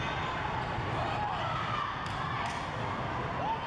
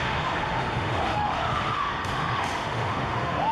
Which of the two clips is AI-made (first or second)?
second